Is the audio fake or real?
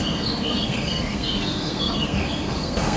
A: fake